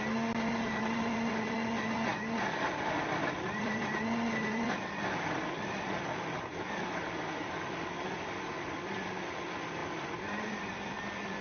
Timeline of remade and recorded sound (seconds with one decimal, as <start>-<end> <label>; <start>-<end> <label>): 0.0-2.1 recorded; 2.1-5.9 remade; 5.9-9.8 recorded; 9.8-10.7 remade; 10.7-11.4 recorded